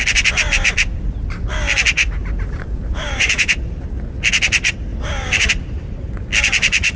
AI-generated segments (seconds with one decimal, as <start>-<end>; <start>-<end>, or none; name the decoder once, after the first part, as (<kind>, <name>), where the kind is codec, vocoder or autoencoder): 2.2-3.5 (vocoder, BigVGAN v2); 4.9-5.5